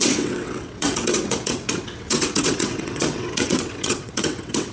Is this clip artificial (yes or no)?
yes